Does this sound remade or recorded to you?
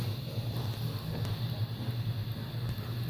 recorded